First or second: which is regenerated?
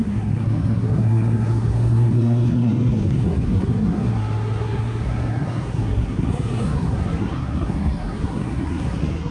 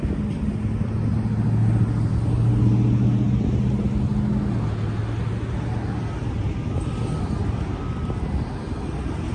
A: first